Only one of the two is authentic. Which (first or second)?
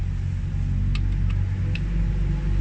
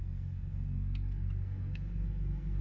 first